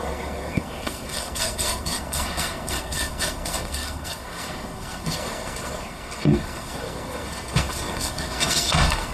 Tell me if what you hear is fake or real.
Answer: fake